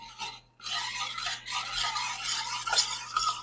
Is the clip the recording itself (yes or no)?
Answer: yes